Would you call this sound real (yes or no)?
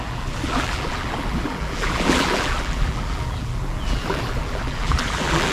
no